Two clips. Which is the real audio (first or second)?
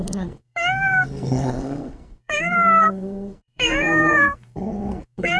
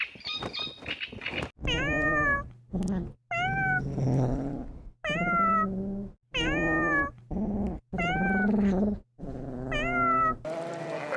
second